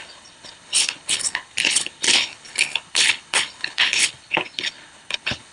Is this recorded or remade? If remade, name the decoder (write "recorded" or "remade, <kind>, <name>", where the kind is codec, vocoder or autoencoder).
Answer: remade, codec, HILCodec